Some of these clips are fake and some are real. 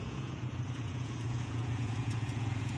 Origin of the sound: fake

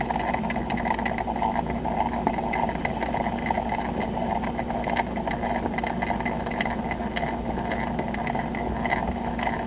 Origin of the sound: real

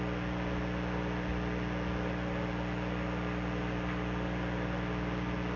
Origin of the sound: real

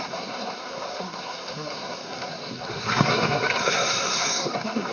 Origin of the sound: fake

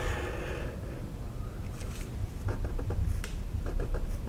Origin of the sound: real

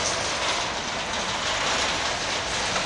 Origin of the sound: real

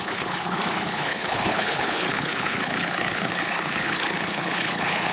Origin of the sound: fake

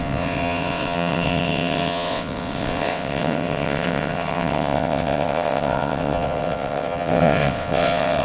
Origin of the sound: fake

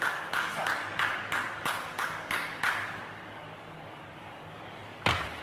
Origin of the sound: fake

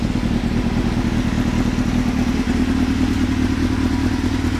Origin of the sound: real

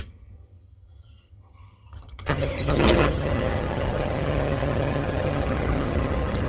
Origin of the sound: fake